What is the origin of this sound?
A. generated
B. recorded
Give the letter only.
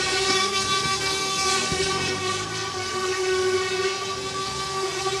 A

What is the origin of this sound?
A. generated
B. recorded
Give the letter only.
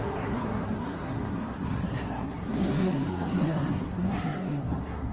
A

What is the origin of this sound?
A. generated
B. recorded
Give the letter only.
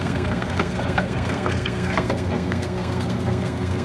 A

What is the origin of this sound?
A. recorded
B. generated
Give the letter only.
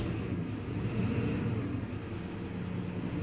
A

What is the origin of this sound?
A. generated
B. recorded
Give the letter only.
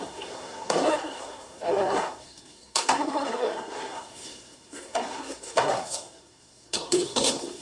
A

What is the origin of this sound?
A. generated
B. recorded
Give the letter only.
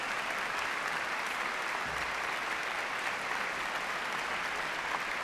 B